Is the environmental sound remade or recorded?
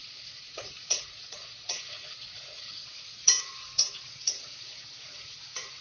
remade